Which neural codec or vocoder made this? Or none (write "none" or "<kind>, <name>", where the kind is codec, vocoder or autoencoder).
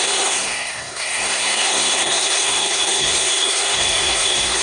codec, SNAC